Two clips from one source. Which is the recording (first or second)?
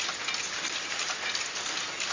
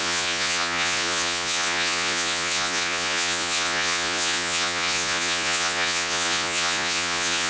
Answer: first